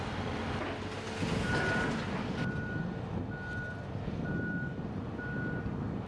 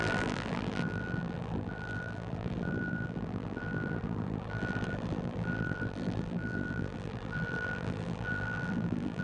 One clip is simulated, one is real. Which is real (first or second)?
first